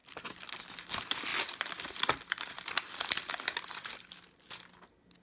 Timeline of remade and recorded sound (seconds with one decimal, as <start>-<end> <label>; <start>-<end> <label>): 0.0-5.2 recorded